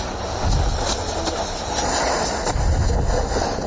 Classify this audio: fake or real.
real